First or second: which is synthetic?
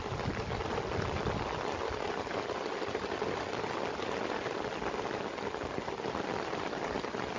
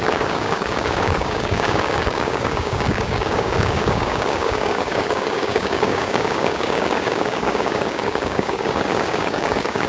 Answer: second